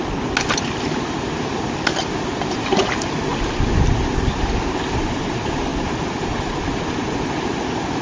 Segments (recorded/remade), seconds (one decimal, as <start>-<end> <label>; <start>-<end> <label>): 0.0-8.0 recorded